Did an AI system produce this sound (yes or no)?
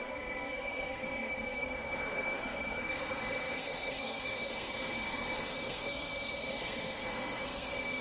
yes